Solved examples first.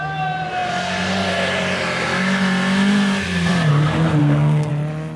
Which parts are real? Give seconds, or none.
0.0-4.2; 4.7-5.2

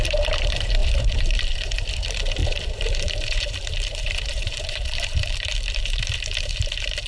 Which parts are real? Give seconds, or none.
none

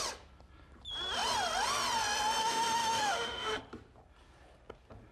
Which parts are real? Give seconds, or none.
0.0-2.4; 3.6-5.1

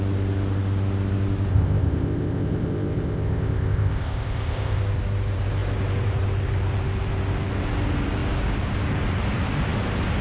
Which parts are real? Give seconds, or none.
0.0-1.5; 4.8-10.2

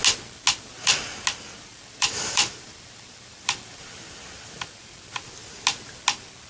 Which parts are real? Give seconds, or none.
0.0-1.7; 5.6-6.5

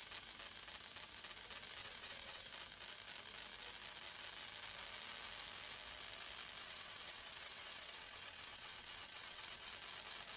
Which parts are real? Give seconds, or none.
0.0-1.8; 2.5-6.6; 9.7-10.4

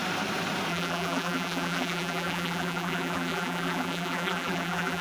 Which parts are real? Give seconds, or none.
0.0-0.7